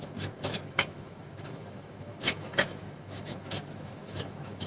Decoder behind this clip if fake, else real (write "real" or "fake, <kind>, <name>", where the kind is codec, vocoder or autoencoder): fake, autoencoder, DAC-VAE